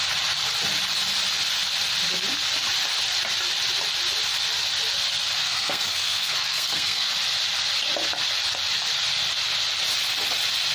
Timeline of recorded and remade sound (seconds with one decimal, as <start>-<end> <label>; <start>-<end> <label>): 0.0-5.4 recorded; 5.4-7.1 remade; 7.1-10.7 recorded